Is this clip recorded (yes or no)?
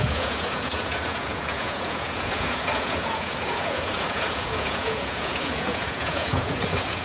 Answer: no